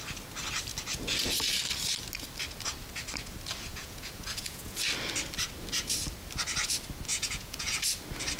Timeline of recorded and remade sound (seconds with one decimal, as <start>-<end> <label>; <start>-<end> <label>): 0.0-3.7 recorded; 3.7-4.8 remade; 4.8-7.1 recorded; 7.1-7.8 remade; 7.8-8.4 recorded